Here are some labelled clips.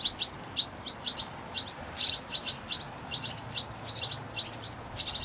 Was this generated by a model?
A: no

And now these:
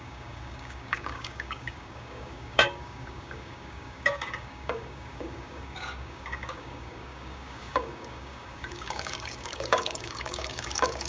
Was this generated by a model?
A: yes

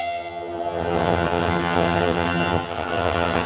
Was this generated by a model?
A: yes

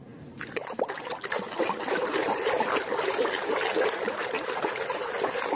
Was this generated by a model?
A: no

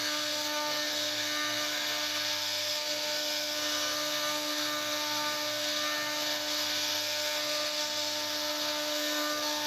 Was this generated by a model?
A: yes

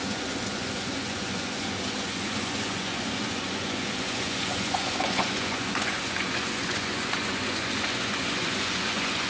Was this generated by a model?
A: yes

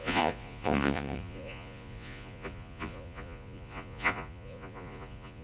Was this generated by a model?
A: yes